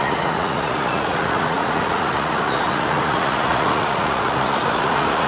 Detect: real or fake fake